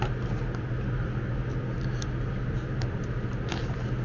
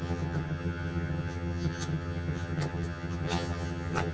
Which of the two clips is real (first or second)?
first